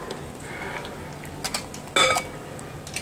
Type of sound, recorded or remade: recorded